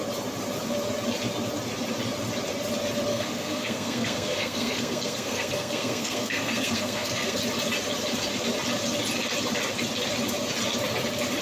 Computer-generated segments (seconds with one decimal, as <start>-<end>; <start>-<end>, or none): 3.1-7.4